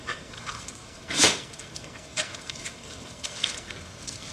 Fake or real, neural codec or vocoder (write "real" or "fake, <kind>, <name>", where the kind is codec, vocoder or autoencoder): fake, codec, SNAC